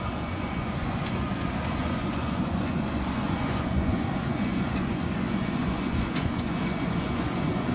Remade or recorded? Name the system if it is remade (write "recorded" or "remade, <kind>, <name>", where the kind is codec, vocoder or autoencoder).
remade, vocoder, Vocos